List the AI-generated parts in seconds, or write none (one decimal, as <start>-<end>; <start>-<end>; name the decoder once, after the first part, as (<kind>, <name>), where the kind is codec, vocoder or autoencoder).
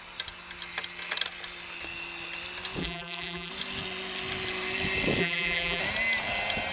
2.8-3.5 (vocoder, BigVGAN v2); 5.2-5.8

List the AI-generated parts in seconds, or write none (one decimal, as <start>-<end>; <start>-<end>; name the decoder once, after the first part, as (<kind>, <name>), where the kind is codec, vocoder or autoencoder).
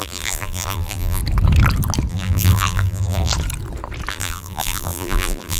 0.0-1.2 (vocoder, BigVGAN v2); 2.1-3.3; 4.1-5.6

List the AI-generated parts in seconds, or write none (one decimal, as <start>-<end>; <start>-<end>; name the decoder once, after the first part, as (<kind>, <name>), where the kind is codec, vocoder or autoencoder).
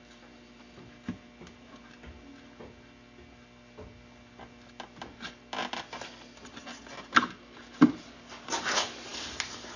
none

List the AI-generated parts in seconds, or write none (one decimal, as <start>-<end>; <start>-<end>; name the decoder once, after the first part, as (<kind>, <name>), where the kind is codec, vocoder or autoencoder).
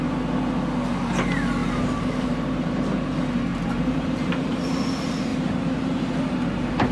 1.6-2.7 (vocoder, BigVGAN v2); 3.5-4.7; 5.3-6.9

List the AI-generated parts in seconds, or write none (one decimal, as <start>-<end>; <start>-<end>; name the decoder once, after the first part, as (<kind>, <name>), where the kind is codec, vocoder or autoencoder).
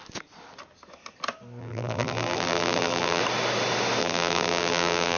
1.6-3.2 (vocoder, BigVGAN v2); 4.0-5.2